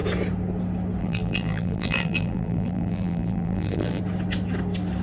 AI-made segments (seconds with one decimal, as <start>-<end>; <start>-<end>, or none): 1.0-4.0